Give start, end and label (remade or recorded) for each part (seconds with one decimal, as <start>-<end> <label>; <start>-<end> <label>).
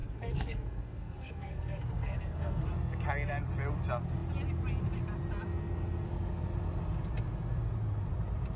0.0-2.6 remade; 2.6-8.6 recorded